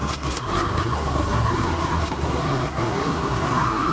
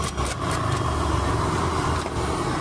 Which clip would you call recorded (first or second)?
second